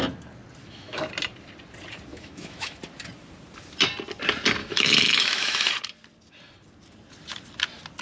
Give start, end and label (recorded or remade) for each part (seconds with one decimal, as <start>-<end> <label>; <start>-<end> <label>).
0.0-0.6 recorded; 0.6-1.1 remade; 1.1-2.1 recorded; 2.1-2.8 remade; 2.8-4.6 recorded; 4.6-5.7 remade; 5.7-8.0 recorded